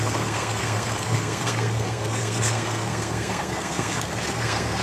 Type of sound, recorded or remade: remade